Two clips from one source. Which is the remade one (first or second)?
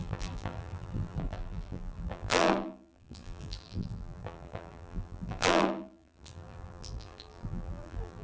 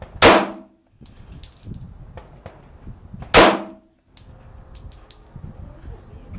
first